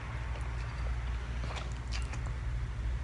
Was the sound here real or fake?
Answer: real